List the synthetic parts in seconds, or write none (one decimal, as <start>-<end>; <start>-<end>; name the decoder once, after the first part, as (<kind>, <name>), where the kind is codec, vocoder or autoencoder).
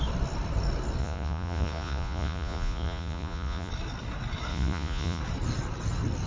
1.0-3.7 (vocoder, Vocos); 4.5-5.2